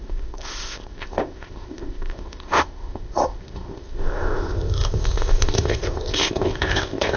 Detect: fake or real fake